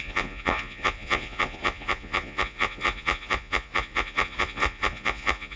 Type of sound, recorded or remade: remade